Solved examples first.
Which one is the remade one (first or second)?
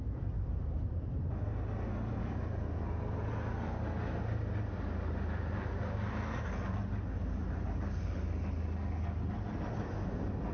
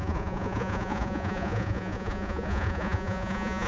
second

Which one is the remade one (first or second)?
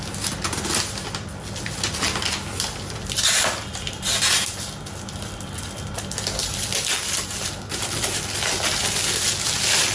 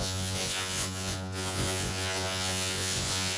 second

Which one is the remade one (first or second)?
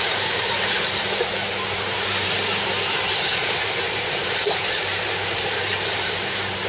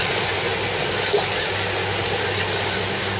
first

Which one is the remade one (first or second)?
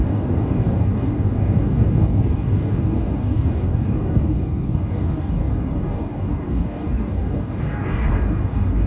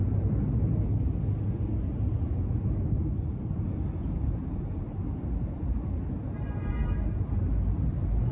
first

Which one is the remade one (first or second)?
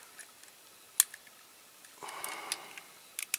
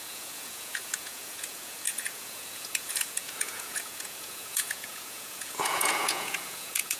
second